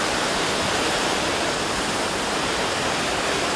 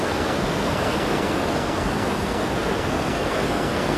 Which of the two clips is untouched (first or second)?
first